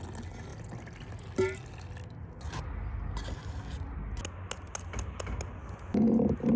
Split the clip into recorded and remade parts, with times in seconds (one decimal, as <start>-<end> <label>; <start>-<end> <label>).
0.0-6.6 recorded